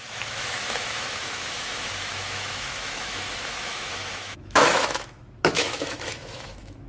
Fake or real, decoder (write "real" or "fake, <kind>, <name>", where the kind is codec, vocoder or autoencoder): fake, autoencoder, DAC-VAE